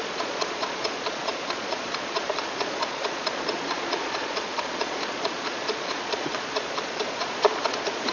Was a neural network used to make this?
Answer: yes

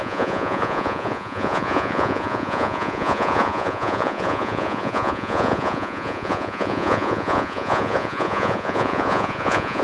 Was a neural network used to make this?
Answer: yes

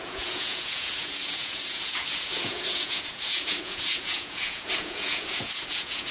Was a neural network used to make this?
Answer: yes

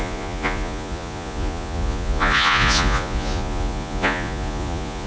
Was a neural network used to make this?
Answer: yes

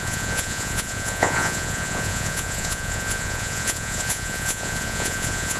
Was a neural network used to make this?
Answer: yes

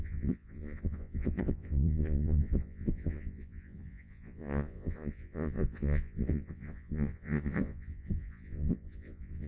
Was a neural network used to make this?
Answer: yes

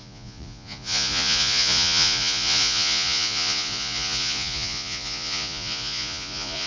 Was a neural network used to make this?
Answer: yes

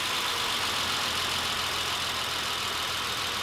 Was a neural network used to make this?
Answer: no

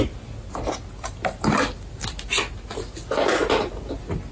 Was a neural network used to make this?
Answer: no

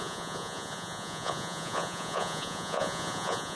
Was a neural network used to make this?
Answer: yes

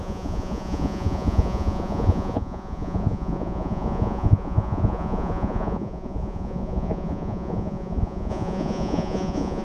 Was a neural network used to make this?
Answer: yes